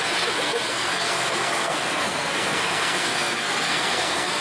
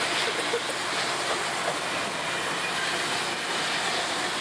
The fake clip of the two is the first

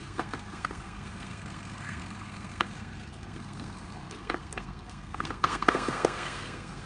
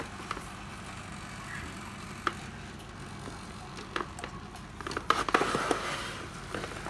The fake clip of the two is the first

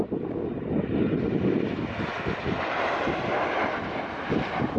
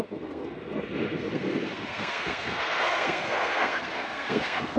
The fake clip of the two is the second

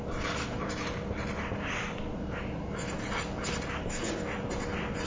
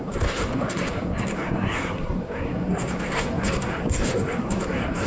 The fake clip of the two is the second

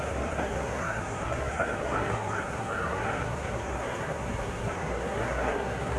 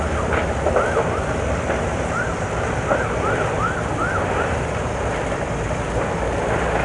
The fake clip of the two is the first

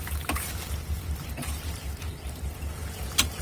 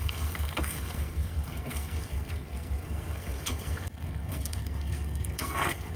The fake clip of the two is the second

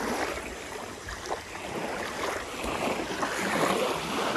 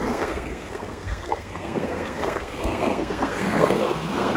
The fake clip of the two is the second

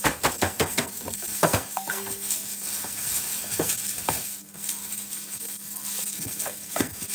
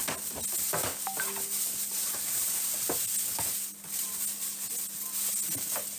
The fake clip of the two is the first